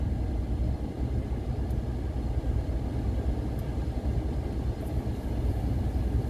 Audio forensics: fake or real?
real